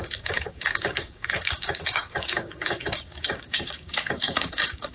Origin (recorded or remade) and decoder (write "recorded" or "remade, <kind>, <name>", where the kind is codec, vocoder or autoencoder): remade, codec, DAC